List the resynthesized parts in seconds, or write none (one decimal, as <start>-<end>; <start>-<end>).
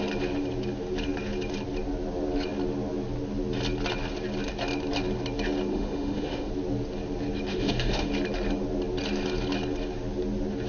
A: 5.7-6.5; 7.5-8.1